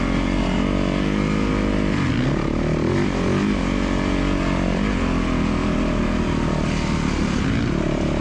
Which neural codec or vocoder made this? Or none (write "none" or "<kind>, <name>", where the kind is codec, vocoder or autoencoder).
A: none